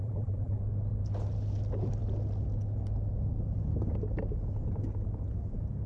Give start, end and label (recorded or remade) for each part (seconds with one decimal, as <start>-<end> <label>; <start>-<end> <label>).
0.0-0.6 remade; 0.6-5.9 recorded